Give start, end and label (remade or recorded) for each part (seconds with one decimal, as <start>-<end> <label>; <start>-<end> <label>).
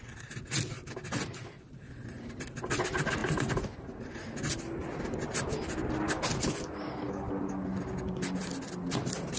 0.0-9.4 recorded